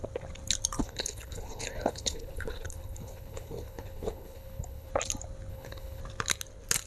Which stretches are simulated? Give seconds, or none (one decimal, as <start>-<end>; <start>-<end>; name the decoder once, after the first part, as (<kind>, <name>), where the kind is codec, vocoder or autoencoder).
0.8-4.9 (codec, HILCodec); 5.5-6.0